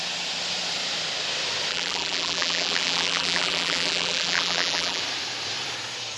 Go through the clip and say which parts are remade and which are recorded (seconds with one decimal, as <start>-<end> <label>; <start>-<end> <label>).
0.0-1.7 recorded; 1.7-5.0 remade; 5.0-6.2 recorded